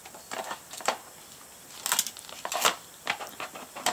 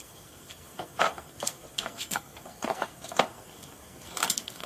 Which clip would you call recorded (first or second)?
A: first